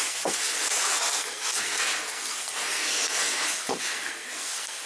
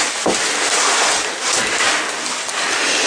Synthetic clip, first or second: first